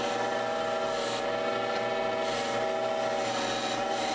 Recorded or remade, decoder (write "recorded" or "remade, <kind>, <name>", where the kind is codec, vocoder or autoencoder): recorded